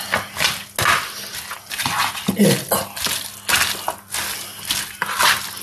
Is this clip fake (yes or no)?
no